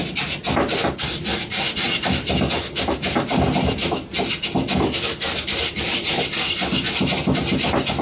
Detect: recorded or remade recorded